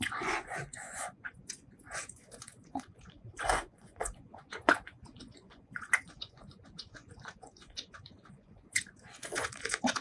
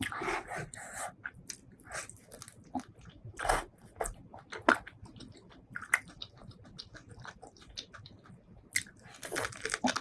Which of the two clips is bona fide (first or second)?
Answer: second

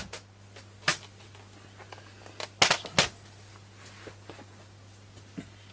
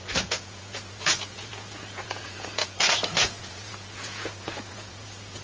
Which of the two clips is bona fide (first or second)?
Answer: first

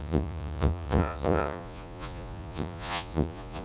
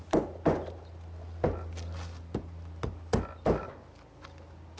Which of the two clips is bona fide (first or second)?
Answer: second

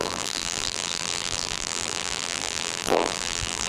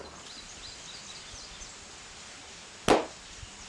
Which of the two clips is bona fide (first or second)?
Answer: second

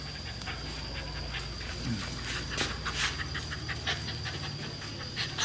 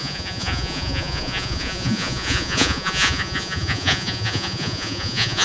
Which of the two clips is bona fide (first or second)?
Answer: first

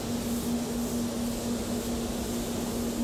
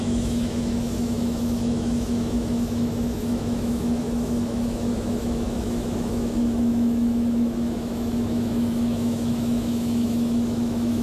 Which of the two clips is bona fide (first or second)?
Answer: first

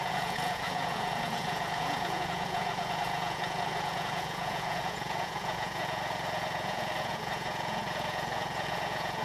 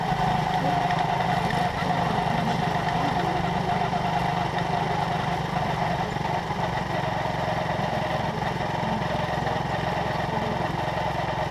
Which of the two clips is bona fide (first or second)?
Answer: second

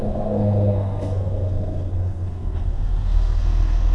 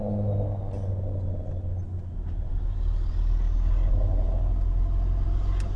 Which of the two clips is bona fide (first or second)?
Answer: second